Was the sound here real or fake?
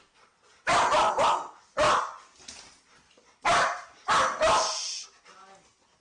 real